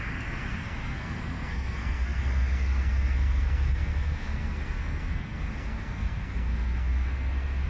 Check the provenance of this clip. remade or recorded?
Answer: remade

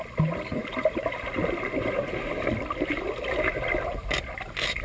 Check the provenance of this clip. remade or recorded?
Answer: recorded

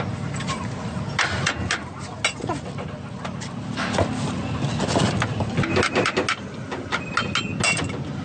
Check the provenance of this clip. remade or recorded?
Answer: recorded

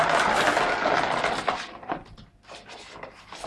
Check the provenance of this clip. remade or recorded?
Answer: recorded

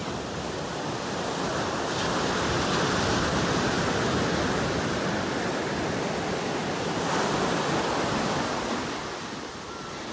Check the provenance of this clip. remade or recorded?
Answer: recorded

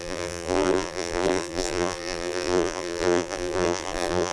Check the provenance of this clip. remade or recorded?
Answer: remade